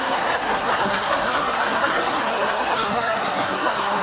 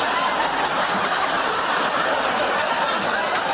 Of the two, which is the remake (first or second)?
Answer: first